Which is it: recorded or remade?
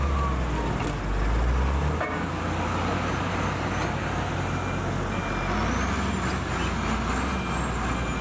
recorded